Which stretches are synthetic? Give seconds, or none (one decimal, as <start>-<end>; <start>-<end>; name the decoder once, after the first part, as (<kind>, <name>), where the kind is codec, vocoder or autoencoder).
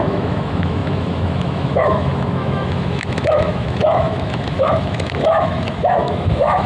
0.0-6.7 (autoencoder, DAC-VAE)